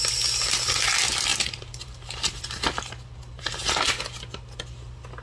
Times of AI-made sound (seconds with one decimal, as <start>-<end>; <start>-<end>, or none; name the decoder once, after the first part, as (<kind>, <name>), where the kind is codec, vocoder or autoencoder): 1.3-3.5 (vocoder, BigVGAN v2)